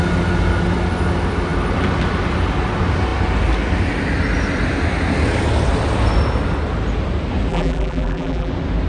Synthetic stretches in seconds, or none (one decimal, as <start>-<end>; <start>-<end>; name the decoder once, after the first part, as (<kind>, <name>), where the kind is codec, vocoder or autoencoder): 7.5-8.5 (vocoder, BigVGAN v2)